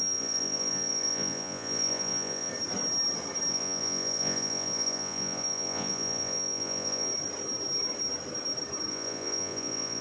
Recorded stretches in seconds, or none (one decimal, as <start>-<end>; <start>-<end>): 2.5-3.5; 7.1-8.9